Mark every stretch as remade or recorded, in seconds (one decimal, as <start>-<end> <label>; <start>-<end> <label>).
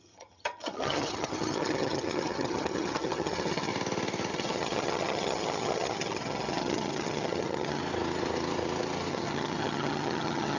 0.0-3.7 remade; 3.7-4.3 recorded; 4.3-7.8 remade; 7.8-9.1 recorded; 9.1-10.6 remade